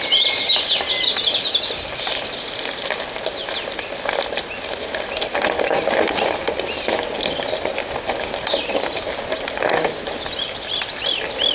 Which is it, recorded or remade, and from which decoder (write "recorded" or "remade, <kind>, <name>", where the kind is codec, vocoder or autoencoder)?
recorded